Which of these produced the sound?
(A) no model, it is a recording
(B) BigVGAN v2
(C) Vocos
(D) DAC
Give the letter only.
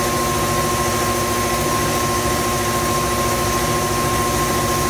A